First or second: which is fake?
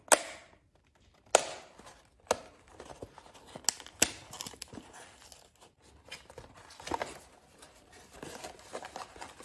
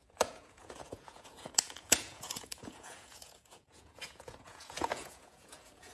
second